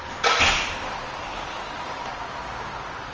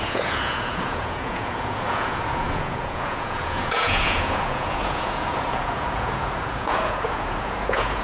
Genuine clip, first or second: first